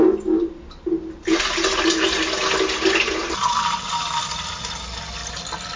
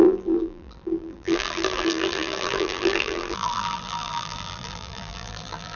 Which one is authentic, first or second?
first